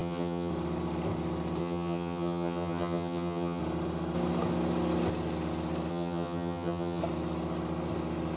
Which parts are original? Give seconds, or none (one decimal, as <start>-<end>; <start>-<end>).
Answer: 0.5-1.6; 3.6-5.9; 7.0-8.4